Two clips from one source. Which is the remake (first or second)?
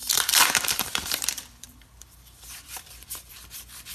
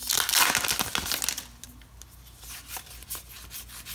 first